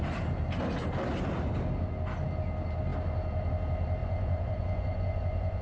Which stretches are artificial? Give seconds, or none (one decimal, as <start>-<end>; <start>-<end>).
4.0-5.6